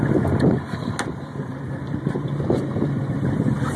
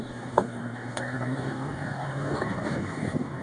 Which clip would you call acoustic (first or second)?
first